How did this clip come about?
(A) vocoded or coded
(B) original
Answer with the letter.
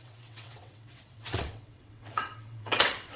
A